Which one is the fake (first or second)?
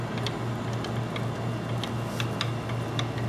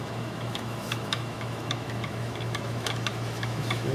second